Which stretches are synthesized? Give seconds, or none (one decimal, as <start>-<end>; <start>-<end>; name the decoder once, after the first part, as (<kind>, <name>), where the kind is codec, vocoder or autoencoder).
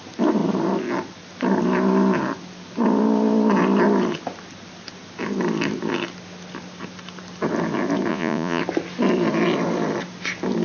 8.1-8.6 (vocoder, Vocos)